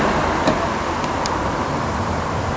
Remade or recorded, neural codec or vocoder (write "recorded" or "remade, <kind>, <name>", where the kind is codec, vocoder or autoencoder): recorded